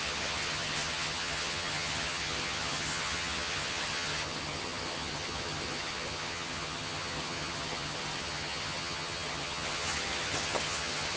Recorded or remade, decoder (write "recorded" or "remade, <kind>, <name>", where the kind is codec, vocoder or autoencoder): remade, vocoder, HiFi-GAN